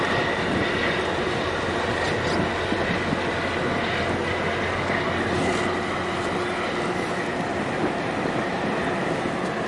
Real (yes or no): yes